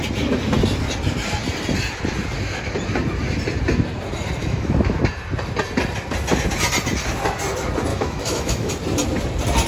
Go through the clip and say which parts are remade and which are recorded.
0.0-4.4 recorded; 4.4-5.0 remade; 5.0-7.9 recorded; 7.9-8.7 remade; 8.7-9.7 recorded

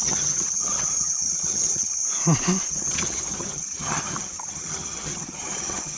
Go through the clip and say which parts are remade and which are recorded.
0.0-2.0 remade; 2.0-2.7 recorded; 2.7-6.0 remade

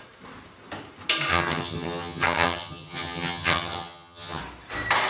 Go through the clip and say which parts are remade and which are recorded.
0.0-1.3 recorded; 1.3-4.4 remade; 4.4-5.1 recorded

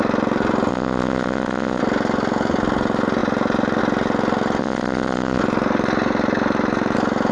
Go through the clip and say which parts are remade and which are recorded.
0.0-0.7 recorded; 0.7-1.8 remade; 1.8-4.6 recorded; 4.6-5.4 remade; 5.4-7.3 recorded

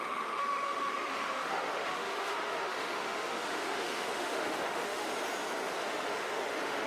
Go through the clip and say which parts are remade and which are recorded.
0.0-5.1 remade; 5.1-5.8 recorded; 5.8-6.9 remade

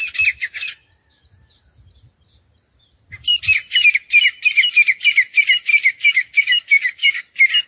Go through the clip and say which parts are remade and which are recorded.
0.0-5.7 recorded; 5.7-7.2 remade; 7.2-7.7 recorded

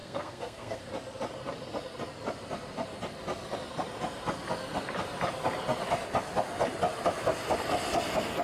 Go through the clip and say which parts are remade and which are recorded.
0.0-0.9 remade; 0.9-8.4 recorded